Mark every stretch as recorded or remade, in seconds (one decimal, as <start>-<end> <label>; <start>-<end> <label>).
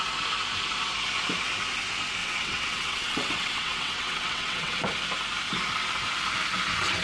0.0-2.2 recorded; 2.2-4.8 remade; 4.8-7.0 recorded